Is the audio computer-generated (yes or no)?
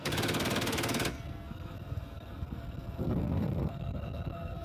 yes